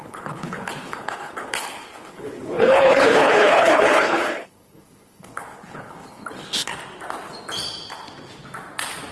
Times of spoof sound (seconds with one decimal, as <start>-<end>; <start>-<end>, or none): 0.0-6.7